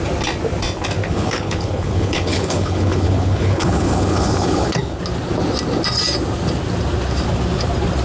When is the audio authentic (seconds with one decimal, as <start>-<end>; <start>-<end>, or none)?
0.0-1.0; 5.0-8.0